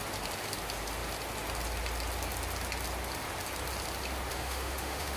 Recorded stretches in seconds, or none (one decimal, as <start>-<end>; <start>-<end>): 0.0-4.3